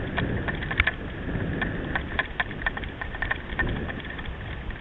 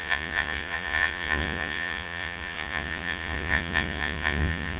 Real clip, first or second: first